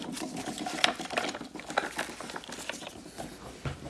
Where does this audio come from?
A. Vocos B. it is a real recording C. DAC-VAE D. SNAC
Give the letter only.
B